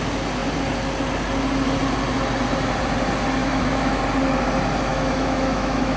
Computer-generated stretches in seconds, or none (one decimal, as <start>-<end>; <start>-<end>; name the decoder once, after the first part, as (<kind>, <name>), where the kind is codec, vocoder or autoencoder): 3.4-4.0 (autoencoder, DAC-VAE); 4.9-6.0